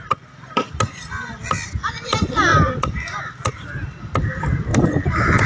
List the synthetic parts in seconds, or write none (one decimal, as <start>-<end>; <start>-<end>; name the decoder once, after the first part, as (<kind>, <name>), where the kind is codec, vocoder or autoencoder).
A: 2.5-3.2 (vocoder, BigVGAN v2); 4.7-5.5